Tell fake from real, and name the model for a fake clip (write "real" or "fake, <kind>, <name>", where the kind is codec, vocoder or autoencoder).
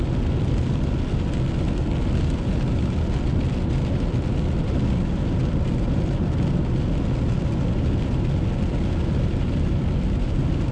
real